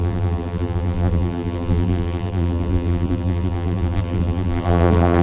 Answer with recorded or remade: remade